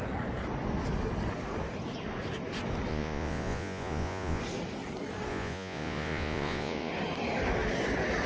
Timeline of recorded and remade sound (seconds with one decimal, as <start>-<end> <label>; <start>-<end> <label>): 0.0-2.9 recorded; 2.9-4.4 remade; 4.4-5.3 recorded; 5.3-6.9 remade; 6.9-8.3 recorded